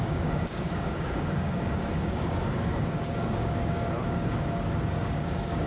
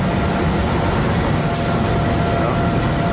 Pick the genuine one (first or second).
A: second